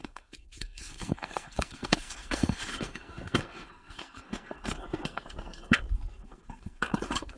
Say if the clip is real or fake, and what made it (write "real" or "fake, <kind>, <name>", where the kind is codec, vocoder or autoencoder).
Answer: fake, codec, SNAC